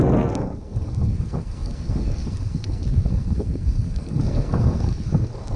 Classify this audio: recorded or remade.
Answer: remade